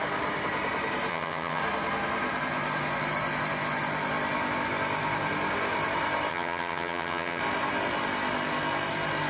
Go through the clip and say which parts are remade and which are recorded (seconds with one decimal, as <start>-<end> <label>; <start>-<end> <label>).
0.0-1.1 recorded; 1.1-1.6 remade; 1.6-6.3 recorded; 6.3-7.4 remade; 7.4-9.3 recorded

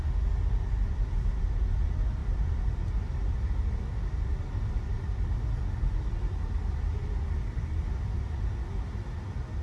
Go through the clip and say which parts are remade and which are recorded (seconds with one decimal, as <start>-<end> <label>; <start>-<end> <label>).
0.0-9.6 recorded

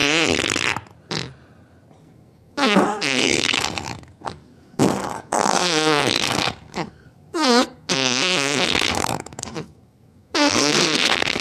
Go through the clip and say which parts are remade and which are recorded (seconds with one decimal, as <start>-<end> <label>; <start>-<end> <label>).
0.0-2.0 recorded; 2.0-11.4 remade

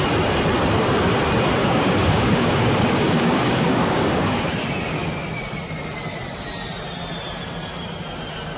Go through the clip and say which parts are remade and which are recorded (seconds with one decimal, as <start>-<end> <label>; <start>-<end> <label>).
0.0-1.6 recorded; 1.6-4.4 remade; 4.4-8.6 recorded

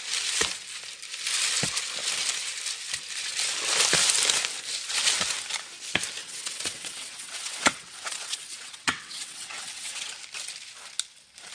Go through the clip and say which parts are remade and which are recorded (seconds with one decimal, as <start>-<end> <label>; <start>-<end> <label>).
0.0-6.2 recorded; 6.2-10.1 remade; 10.1-11.5 recorded

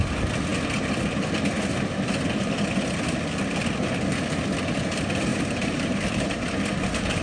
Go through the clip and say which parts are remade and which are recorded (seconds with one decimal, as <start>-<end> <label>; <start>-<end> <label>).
0.0-5.3 recorded; 5.3-7.2 remade